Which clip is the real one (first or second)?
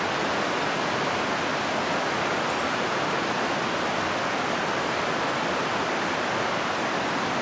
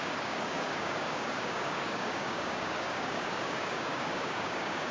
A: first